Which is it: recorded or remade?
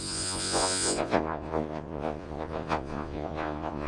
remade